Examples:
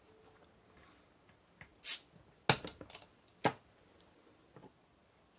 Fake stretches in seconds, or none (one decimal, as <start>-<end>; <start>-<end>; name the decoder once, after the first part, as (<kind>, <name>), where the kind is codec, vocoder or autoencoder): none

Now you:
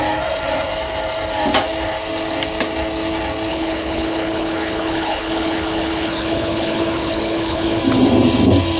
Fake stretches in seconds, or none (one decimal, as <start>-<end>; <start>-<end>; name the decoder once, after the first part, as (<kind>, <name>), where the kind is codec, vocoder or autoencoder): 3.5-7.8 (codec, HILCodec)

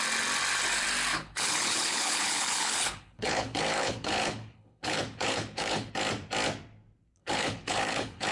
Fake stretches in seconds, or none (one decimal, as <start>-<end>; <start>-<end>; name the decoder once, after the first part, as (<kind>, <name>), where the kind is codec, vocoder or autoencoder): 1.1-5.9 (codec, HILCodec); 7.2-8.3

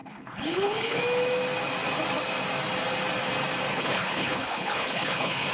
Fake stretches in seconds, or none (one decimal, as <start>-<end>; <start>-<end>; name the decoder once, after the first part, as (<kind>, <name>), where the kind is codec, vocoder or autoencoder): 0.0-1.0 (codec, HILCodec); 3.7-5.5

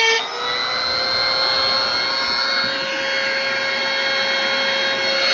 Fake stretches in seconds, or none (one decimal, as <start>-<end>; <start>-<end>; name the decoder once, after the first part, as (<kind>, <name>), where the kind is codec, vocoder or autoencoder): none